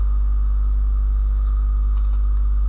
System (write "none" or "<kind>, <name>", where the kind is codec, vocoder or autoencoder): none